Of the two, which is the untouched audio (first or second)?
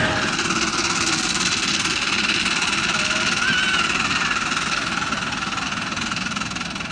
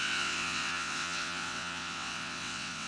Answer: first